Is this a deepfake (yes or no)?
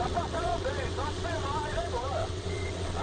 yes